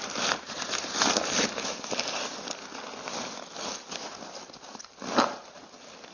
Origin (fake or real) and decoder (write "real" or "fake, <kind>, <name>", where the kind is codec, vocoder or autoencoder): real